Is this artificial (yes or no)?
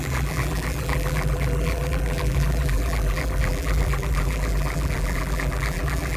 yes